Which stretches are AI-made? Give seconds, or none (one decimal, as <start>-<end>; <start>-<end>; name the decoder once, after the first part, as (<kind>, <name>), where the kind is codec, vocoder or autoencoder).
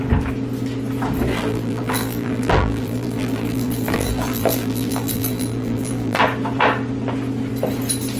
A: 1.3-6.2 (vocoder, BigVGAN v2)